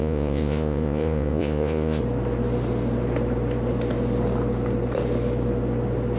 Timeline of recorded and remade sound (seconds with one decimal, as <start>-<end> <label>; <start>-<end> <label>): 0.0-2.0 remade; 2.0-6.2 recorded